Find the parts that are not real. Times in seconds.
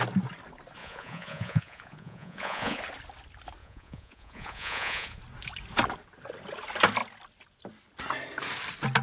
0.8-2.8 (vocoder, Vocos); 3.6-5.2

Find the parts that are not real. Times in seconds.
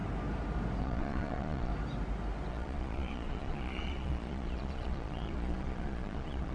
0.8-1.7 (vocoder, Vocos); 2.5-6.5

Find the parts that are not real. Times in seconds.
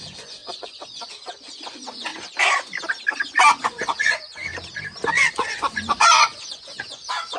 0.0-2.1 (vocoder, Vocos); 3.6-4.5; 5.3-7.4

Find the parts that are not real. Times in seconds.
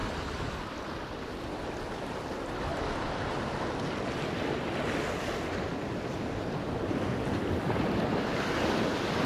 none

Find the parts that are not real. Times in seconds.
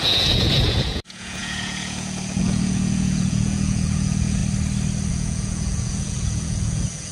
0.0-4.4 (vocoder, Vocos); 5.1-7.1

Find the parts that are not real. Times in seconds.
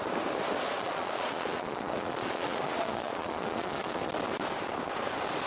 0.7-4.0 (vocoder, Vocos)